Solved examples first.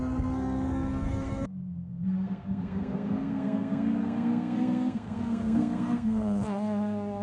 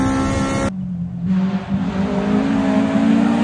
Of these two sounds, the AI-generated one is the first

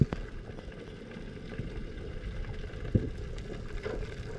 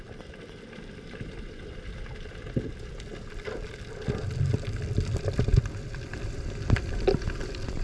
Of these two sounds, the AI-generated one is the second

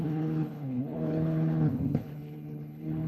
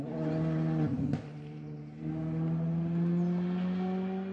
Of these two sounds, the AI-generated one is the first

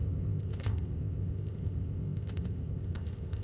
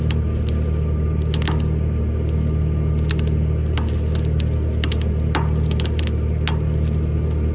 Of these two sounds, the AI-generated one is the first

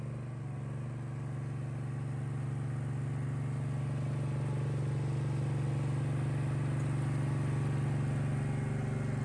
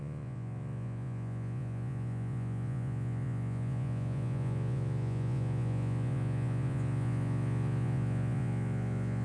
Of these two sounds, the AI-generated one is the second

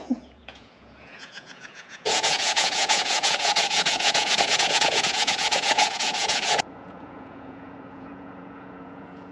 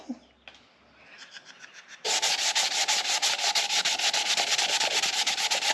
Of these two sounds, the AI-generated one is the first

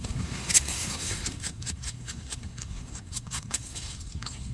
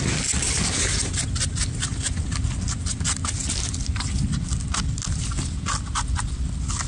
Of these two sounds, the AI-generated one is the first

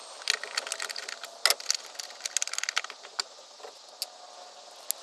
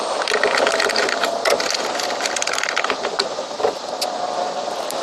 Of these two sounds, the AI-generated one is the second